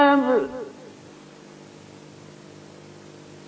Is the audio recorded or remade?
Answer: recorded